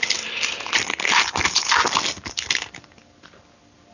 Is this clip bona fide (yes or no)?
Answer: yes